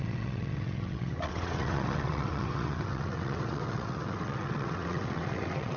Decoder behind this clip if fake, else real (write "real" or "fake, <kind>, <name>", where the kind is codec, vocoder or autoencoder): fake, vocoder, WaveNeXt